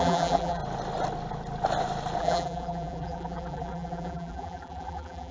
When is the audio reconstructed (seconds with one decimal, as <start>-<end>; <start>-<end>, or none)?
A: 0.0-0.6; 2.2-5.3

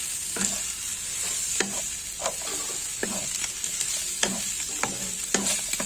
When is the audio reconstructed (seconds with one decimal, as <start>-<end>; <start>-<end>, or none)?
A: none

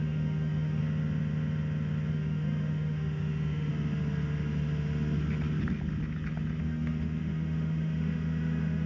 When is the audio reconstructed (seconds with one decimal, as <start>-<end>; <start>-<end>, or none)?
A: 0.0-0.8; 2.1-3.7; 6.6-8.9